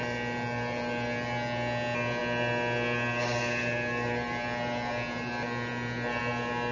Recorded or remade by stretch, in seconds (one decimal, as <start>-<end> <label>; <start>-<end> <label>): 0.0-6.7 recorded